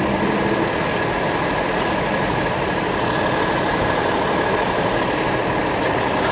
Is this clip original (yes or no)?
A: yes